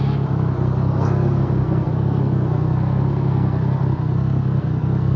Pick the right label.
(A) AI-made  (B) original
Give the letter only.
A